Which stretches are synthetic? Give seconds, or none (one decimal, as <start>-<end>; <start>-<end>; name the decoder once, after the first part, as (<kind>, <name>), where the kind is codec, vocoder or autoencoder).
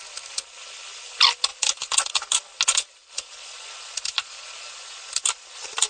none